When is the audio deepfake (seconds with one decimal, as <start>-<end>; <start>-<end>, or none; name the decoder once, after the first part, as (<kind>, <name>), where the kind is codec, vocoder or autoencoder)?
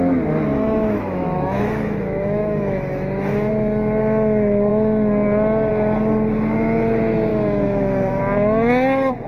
0.5-3.5 (autoencoder, DAC-VAE); 7.3-8.2